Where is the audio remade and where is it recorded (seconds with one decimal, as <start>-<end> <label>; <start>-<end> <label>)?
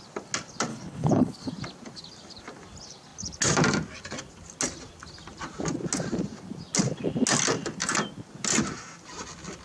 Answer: 0.0-0.7 recorded; 0.7-1.5 remade; 1.5-9.6 recorded